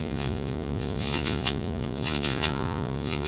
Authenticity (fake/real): fake